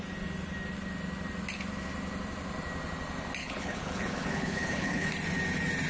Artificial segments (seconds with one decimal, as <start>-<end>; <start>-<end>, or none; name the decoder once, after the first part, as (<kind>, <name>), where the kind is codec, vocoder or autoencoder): 3.4-5.1 (codec, HILCodec)